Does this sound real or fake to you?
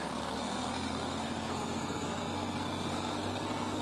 fake